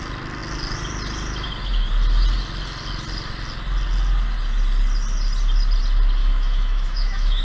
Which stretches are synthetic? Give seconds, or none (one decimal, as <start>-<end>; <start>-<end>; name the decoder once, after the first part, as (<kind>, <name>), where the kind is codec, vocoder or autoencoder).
6.2-7.4 (autoencoder, DAC-VAE)